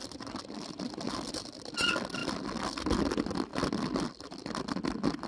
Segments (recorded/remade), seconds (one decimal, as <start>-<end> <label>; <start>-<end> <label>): 0.0-5.3 recorded